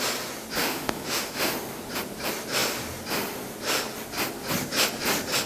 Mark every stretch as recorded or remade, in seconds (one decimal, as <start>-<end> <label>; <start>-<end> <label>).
0.0-0.6 recorded; 0.6-1.5 remade; 1.5-5.5 recorded